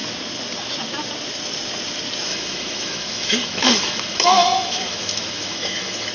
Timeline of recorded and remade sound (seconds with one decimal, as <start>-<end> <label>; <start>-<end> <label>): 0.0-2.3 recorded; 2.3-6.1 remade